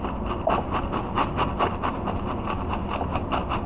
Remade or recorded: recorded